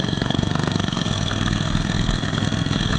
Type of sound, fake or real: fake